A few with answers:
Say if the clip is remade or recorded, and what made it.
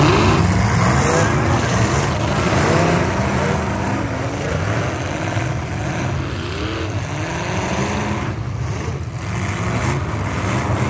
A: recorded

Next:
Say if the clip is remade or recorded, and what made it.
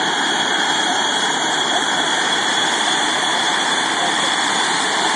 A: remade, vocoder, BigVGAN v2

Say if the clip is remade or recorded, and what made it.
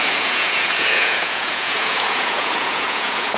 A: remade, vocoder, Vocos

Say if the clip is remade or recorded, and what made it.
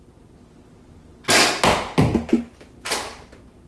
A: recorded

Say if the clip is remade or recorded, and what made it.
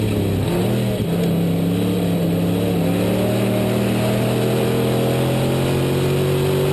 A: recorded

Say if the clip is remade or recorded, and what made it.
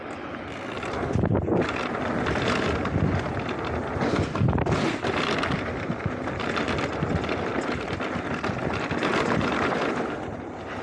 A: recorded